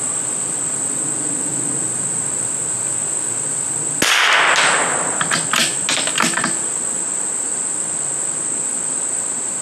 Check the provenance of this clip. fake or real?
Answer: real